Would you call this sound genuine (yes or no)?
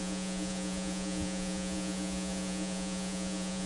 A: no